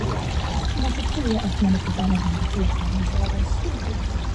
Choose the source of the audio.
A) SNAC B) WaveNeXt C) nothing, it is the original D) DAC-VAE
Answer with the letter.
C